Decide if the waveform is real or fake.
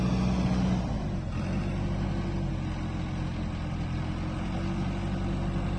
real